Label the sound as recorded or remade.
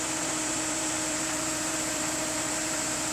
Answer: remade